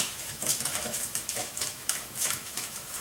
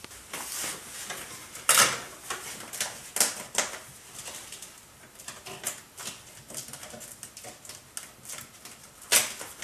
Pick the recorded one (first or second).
second